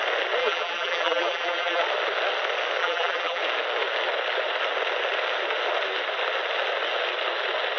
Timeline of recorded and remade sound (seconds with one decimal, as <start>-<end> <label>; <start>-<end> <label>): 0.0-0.4 recorded; 0.4-1.8 remade; 1.8-2.8 recorded; 2.8-3.4 remade; 3.4-7.8 recorded